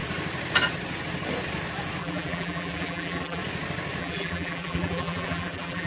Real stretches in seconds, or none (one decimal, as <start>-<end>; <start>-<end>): 0.0-2.0; 3.4-4.0